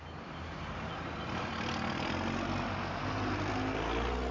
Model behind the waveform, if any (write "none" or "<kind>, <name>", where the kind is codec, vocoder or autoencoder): none